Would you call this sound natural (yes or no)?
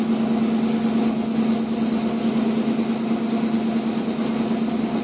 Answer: yes